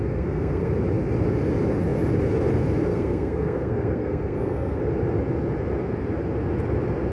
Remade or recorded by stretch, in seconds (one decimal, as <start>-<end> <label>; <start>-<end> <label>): 0.0-0.7 remade; 0.7-2.9 recorded; 2.9-4.8 remade; 4.8-7.1 recorded